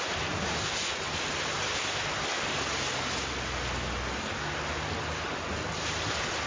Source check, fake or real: real